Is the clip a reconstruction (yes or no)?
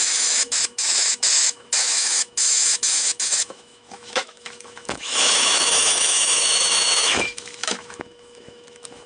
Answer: yes